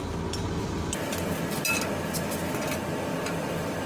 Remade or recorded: recorded